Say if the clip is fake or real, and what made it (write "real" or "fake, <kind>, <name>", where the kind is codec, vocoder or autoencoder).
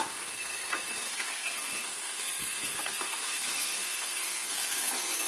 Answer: fake, codec, SNAC